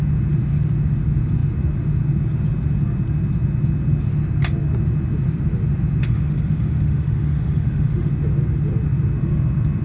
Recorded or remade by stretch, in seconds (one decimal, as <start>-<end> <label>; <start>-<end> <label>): 0.0-6.0 recorded; 6.0-8.1 remade; 8.1-9.8 recorded